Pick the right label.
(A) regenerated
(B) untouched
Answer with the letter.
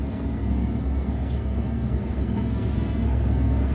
A